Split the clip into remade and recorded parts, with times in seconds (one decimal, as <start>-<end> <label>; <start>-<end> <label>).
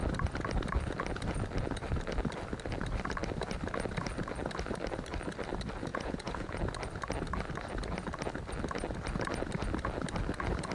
0.0-5.9 recorded; 5.9-6.6 remade; 6.6-10.7 recorded